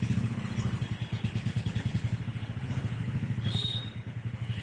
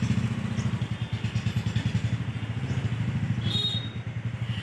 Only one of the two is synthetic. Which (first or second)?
first